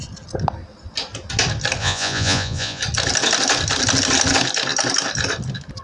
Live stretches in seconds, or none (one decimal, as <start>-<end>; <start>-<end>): 0.0-1.8; 2.8-5.8